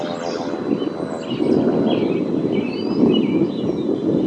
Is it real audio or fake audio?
real